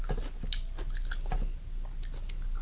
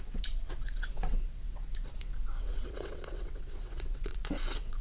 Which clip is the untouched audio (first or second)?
first